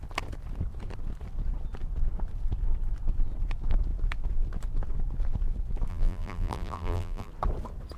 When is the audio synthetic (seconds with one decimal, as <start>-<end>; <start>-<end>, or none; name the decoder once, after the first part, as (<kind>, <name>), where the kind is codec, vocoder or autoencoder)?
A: 5.9-7.3 (vocoder, BigVGAN v2)